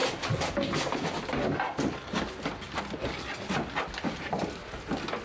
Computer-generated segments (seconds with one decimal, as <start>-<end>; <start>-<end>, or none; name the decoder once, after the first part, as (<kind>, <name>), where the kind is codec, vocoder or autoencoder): none